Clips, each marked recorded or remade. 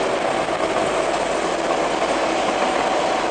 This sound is recorded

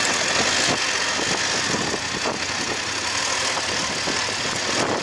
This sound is recorded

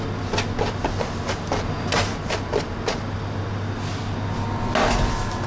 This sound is recorded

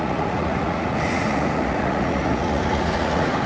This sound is remade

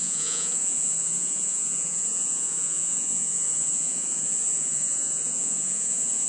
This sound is remade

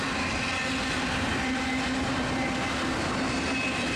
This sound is recorded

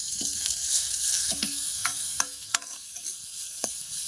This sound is remade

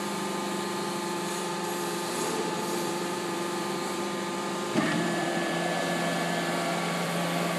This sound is remade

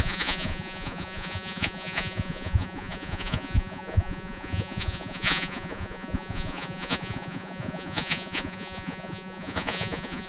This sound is remade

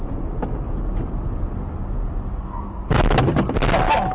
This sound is recorded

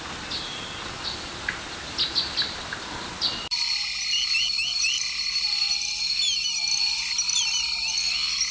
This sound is recorded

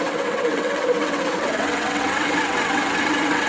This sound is remade